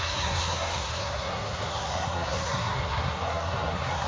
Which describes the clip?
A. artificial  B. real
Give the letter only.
A